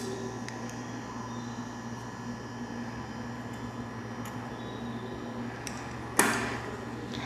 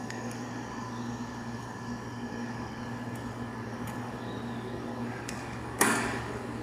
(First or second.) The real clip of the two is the first